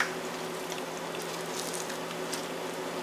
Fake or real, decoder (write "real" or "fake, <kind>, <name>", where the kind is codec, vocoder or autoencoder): real